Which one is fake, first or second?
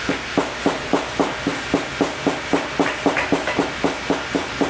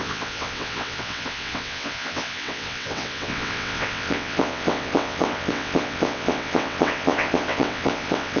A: second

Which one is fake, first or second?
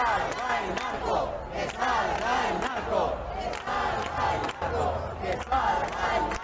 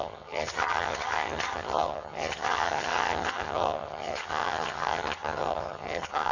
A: second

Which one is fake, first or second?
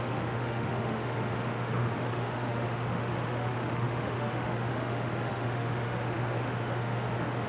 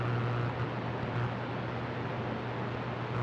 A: first